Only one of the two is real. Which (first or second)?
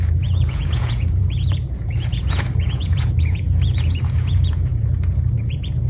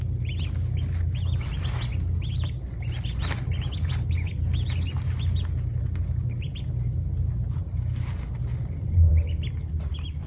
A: second